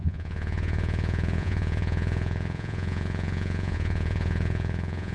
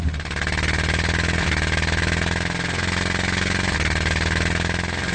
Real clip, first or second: second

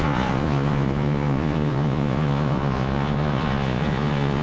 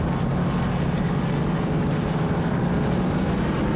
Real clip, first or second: second